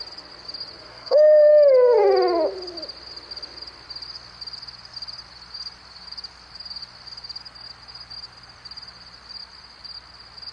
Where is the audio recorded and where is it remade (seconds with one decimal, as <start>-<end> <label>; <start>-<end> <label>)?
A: 0.0-0.9 recorded; 0.9-1.5 remade; 1.5-10.5 recorded